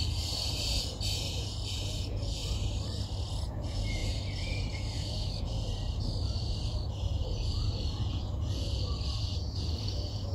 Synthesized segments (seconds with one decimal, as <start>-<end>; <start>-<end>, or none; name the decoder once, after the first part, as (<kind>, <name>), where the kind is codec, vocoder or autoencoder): 0.0-2.4 (vocoder, Vocos); 3.5-10.3